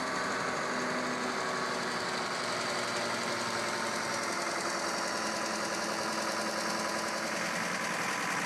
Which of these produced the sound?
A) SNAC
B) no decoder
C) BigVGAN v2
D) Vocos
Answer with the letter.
B